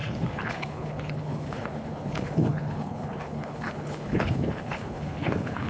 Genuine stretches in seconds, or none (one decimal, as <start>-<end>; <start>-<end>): none